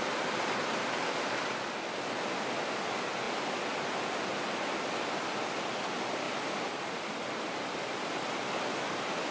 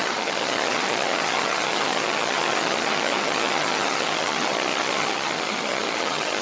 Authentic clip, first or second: first